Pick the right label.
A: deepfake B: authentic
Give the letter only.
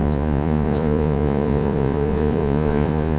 A